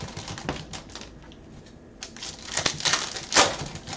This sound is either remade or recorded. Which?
recorded